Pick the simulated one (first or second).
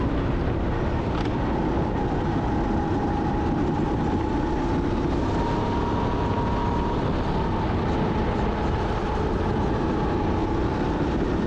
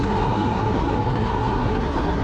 second